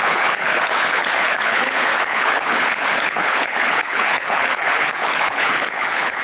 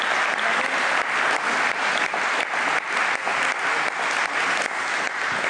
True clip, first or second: second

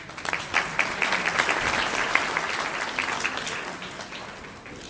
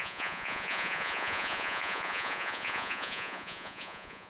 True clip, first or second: first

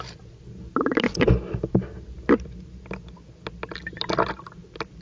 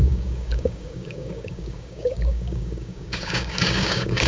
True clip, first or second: first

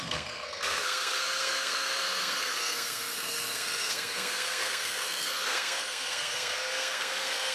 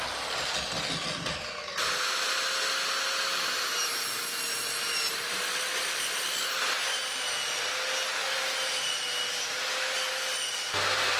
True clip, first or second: second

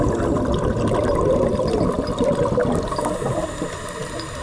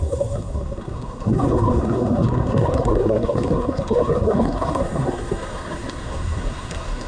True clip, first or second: first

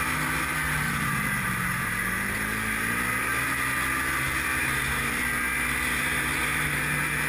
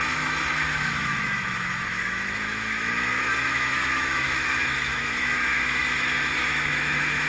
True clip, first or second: first